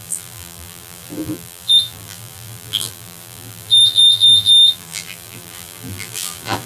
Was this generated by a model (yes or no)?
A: yes